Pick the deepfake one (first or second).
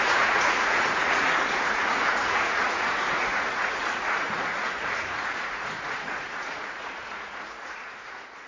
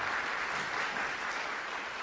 first